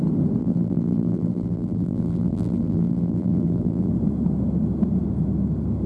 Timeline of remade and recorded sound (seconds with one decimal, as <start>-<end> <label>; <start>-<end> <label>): 0.0-0.4 recorded; 0.4-3.9 remade; 3.9-5.9 recorded